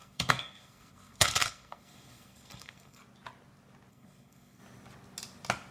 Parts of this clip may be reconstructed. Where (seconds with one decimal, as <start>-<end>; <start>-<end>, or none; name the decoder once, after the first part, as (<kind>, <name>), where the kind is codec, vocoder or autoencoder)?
0.0-3.0 (codec, SNAC); 3.9-4.6